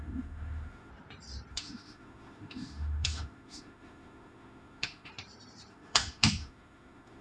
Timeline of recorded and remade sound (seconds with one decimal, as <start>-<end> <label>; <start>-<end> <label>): 0.0-0.9 remade; 0.9-1.5 recorded; 1.5-5.1 remade; 5.1-5.7 recorded; 5.7-7.2 remade